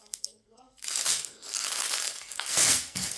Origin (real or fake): fake